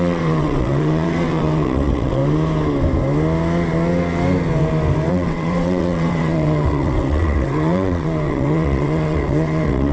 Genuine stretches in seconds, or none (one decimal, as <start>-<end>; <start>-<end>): 2.2-5.1